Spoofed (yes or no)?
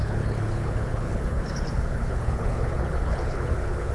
yes